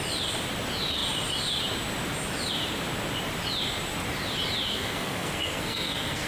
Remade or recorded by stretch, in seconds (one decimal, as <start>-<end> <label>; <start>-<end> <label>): 0.0-4.7 recorded; 4.7-6.3 remade